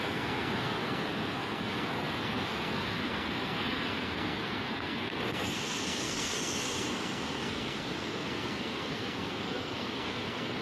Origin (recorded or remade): remade